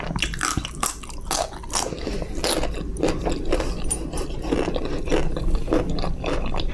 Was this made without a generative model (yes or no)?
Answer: yes